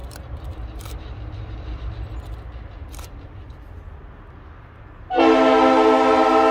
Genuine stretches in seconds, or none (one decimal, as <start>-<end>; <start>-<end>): 1.8-2.8; 3.5-6.5